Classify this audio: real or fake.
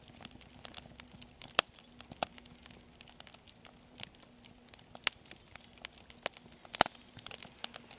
real